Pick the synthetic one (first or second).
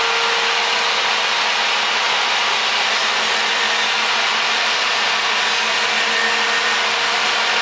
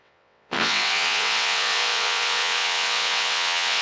second